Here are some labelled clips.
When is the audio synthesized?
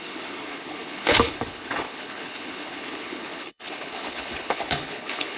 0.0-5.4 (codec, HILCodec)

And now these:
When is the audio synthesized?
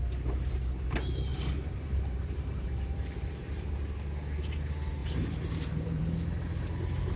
1.3-3.7 (vocoder, BigVGAN v2); 5.0-6.0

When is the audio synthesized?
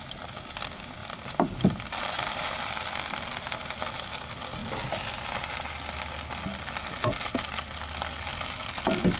1.0-2.9 (vocoder, BigVGAN v2)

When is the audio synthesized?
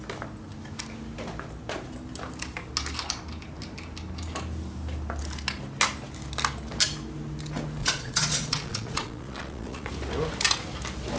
7.8-9.9 (vocoder, Vocos)